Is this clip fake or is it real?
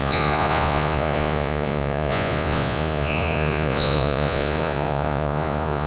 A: fake